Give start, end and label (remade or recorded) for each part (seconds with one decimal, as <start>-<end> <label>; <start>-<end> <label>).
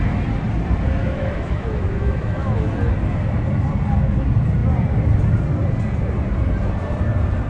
0.0-1.0 recorded; 1.0-2.7 remade; 2.7-7.5 recorded